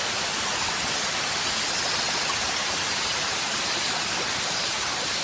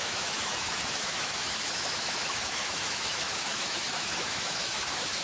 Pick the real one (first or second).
first